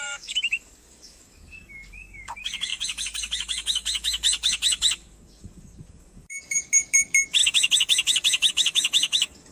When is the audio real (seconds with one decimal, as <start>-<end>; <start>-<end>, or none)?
none